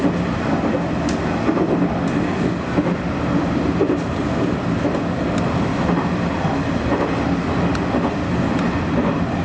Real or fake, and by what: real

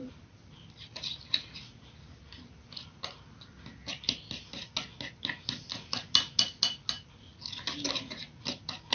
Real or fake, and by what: real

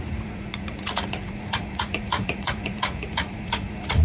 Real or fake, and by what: fake, vocoder, Vocos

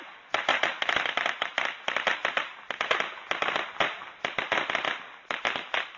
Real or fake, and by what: real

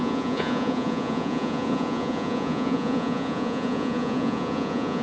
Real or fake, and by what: fake, vocoder, Vocos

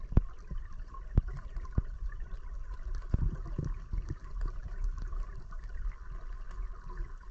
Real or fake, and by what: real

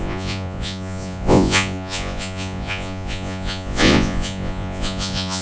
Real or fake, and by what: fake, vocoder, Vocos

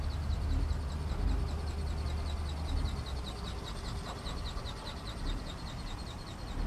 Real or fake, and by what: real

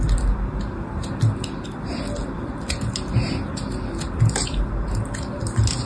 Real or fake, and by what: real